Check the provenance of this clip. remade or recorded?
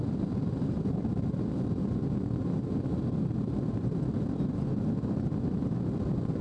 recorded